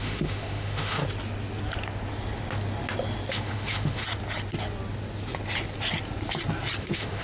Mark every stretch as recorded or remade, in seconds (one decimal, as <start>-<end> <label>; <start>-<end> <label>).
0.0-1.0 remade; 1.0-3.3 recorded; 3.3-4.0 remade; 4.0-6.8 recorded; 6.8-7.2 remade